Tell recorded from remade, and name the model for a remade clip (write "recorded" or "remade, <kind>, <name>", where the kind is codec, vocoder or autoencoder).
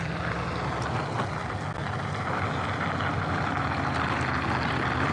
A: recorded